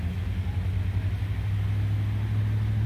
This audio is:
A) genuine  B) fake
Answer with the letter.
A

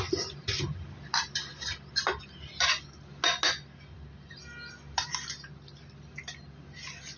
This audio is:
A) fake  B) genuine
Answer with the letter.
B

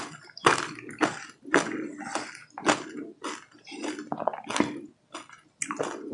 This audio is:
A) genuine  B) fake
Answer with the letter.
A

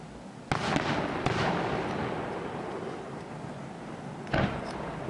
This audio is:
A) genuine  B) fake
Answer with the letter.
A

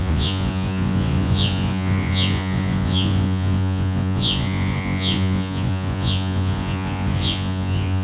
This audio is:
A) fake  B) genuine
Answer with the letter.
A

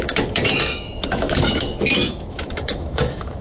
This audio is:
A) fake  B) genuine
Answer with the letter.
A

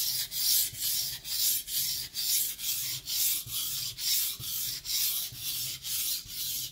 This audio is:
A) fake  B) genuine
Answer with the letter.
B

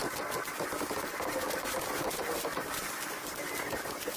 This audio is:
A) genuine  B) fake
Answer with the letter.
A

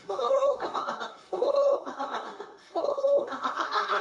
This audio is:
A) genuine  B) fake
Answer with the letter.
B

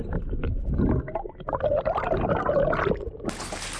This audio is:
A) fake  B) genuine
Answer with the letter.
B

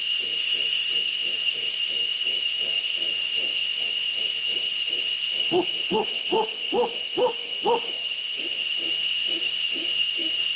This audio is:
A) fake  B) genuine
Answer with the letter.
A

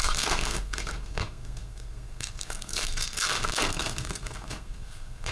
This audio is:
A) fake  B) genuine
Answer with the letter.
A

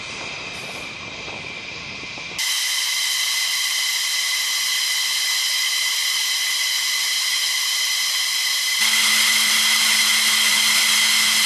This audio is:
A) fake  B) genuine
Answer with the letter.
B